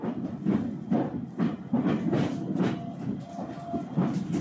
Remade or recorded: recorded